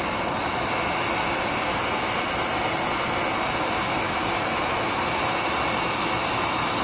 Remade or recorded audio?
recorded